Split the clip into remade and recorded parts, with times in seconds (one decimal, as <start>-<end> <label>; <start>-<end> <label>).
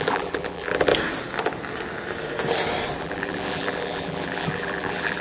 0.0-0.9 remade; 0.9-3.0 recorded; 3.0-5.2 remade